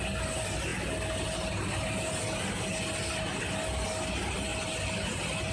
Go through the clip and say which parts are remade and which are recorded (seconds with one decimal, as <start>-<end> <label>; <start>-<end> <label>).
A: 0.0-5.5 recorded